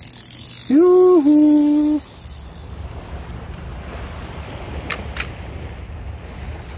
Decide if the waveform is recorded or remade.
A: recorded